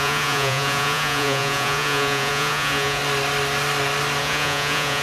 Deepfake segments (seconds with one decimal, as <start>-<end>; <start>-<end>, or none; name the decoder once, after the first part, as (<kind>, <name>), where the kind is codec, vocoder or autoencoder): 0.0-3.0 (vocoder, Vocos); 4.2-5.0